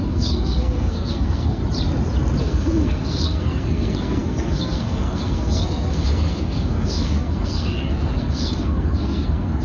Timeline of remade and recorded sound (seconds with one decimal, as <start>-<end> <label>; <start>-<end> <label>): 0.0-1.6 remade; 1.6-2.4 recorded; 2.4-9.6 remade